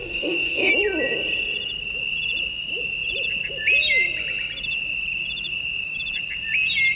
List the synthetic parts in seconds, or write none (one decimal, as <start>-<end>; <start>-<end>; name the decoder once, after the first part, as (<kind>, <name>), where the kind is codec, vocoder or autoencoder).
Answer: 0.0-0.7 (codec, DAC)